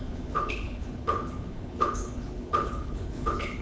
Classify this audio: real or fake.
fake